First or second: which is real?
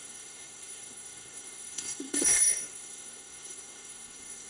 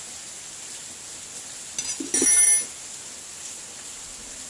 second